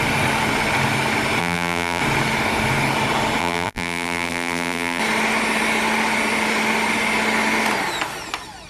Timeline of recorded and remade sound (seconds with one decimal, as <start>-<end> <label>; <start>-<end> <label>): 0.0-1.4 recorded; 1.4-2.0 remade; 2.0-3.4 recorded; 3.4-5.0 remade; 5.0-8.7 recorded